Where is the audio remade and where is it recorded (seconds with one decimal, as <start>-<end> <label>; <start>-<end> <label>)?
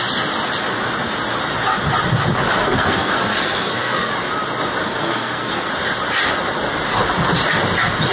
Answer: 0.0-2.6 recorded; 2.6-4.1 remade; 4.1-4.8 recorded; 4.8-5.7 remade; 5.7-8.1 recorded